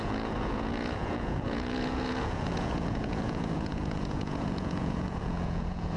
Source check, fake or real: fake